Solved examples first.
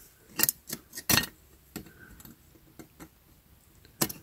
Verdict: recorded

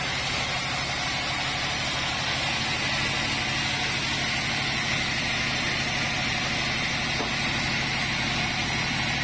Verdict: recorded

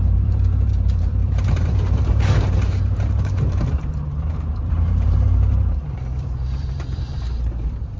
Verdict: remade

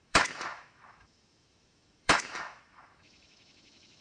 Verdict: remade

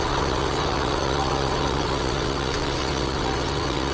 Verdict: remade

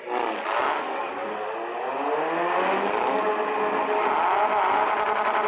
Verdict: recorded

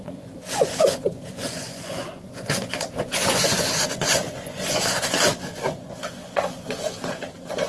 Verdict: remade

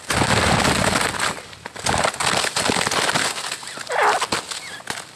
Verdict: recorded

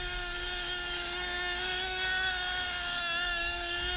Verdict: remade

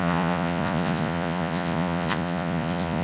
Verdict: remade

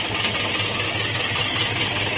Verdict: recorded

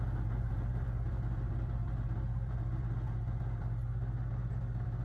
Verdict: recorded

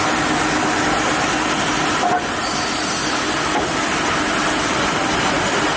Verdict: recorded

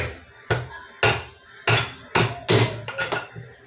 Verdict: recorded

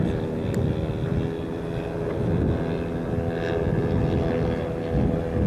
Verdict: recorded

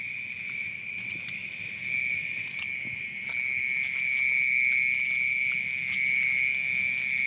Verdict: recorded